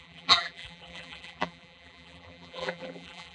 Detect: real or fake fake